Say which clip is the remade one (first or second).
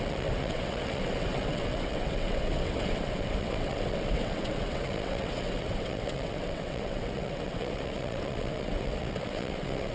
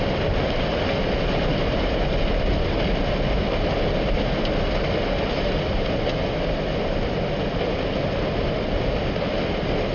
first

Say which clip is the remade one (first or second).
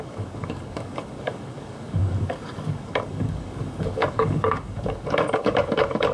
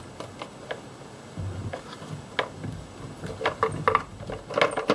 first